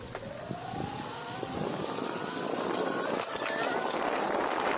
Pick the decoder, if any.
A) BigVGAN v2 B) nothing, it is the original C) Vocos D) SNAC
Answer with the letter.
B